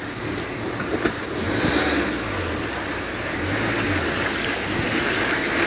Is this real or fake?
real